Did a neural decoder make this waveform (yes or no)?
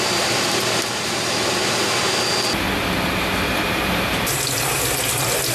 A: no